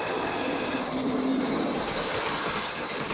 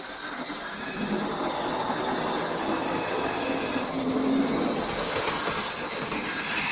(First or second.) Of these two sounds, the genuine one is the second